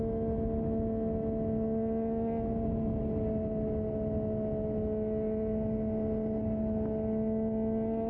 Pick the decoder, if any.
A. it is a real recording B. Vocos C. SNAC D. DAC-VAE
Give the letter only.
A